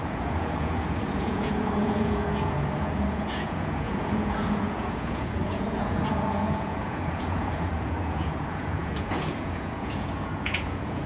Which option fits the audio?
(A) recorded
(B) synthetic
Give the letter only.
B